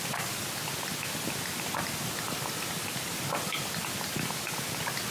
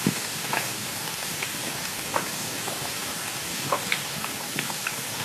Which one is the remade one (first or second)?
second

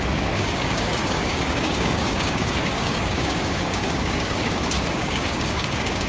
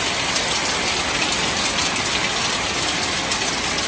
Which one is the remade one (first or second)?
first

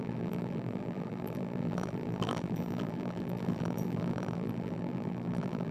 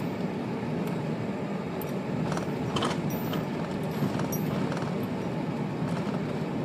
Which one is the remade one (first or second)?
first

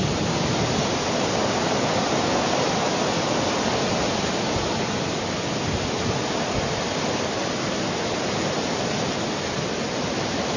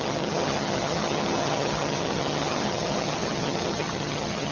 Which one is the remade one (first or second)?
second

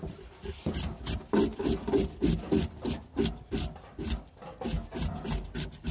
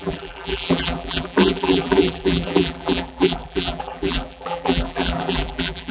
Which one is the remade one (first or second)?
second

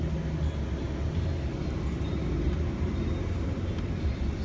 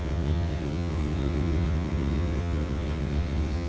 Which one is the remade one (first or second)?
second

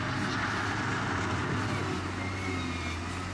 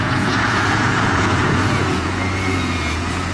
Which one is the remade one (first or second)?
second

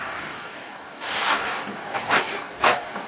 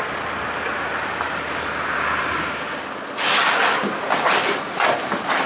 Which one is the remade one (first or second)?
first